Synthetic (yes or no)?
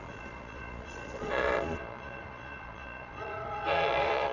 yes